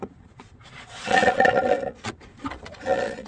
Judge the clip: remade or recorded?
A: remade